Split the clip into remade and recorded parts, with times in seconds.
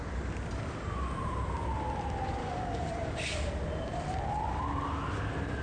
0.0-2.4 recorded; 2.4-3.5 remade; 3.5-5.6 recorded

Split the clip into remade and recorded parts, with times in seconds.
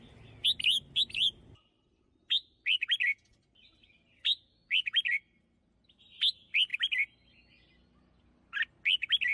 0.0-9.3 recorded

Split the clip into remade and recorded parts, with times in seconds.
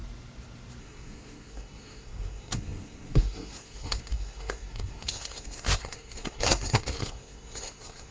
0.0-0.8 recorded; 0.8-8.1 remade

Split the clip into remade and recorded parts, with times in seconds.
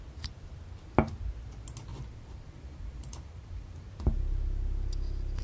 0.0-1.9 recorded; 1.9-3.9 remade; 3.9-5.4 recorded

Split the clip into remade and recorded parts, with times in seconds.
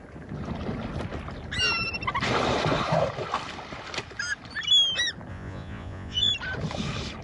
0.0-5.3 recorded; 5.3-6.3 remade; 6.3-7.2 recorded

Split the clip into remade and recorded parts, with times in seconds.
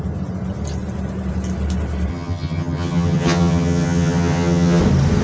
0.0-2.1 recorded; 2.1-4.8 remade; 4.8-5.2 recorded